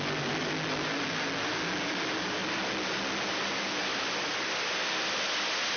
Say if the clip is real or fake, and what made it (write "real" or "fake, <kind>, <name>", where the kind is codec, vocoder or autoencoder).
real